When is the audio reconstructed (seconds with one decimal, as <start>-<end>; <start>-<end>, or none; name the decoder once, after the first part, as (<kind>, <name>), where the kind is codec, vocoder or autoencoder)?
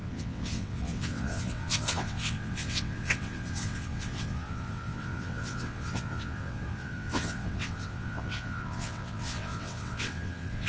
0.0-10.7 (vocoder, WaveNeXt)